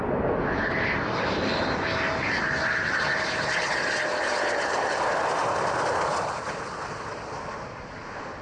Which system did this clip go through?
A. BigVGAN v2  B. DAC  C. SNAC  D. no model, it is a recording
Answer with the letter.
D